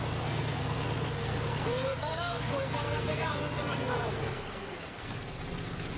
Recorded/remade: remade